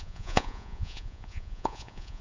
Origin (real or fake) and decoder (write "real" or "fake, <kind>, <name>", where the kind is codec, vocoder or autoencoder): fake, vocoder, Vocos